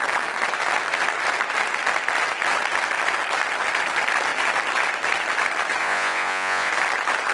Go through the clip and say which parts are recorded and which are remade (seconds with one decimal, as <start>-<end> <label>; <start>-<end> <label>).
0.0-5.8 recorded; 5.8-6.7 remade; 6.7-7.3 recorded